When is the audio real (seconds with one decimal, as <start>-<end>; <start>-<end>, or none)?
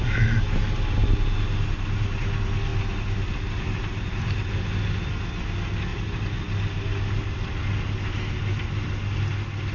0.0-9.7